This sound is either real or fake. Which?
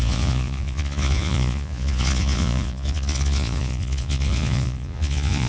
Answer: fake